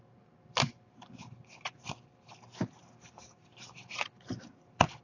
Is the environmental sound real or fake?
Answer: fake